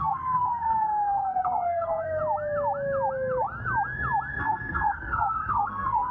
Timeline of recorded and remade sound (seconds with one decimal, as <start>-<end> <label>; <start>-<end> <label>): 0.0-2.2 remade; 2.2-4.4 recorded; 4.4-6.1 remade